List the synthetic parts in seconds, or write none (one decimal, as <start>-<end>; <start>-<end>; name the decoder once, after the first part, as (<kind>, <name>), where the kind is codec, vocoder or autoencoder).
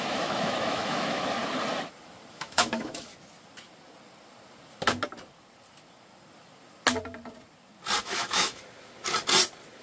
0.0-1.4 (autoencoder, DAC-VAE); 2.3-3.1; 8.0-8.6